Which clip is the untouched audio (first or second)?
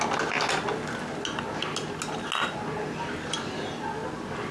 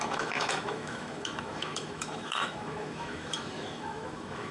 first